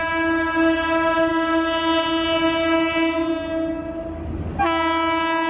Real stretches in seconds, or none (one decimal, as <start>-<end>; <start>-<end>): 0.0-5.5

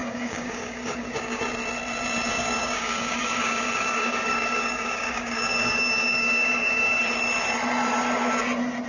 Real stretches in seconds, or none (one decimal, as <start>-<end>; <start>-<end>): 1.4-2.3; 7.0-8.9

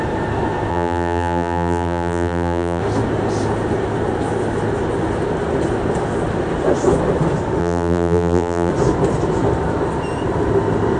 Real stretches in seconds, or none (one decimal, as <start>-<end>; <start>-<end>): 0.0-0.7; 2.8-7.6; 8.7-11.0

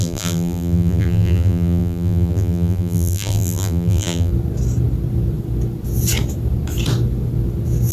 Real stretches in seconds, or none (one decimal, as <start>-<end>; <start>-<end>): 4.3-7.9

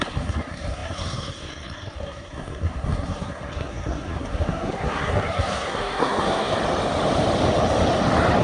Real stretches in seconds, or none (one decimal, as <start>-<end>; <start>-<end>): 6.5-8.4

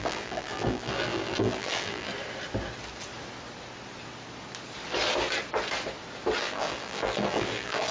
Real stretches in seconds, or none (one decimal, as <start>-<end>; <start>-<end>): 2.1-6.4

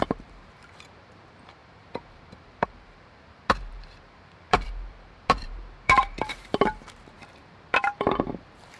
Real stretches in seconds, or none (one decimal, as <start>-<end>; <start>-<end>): none

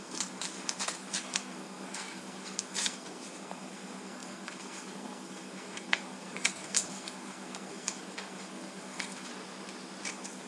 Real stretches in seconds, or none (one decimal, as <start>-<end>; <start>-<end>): 9.3-10.1